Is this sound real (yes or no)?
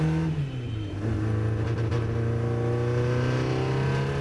yes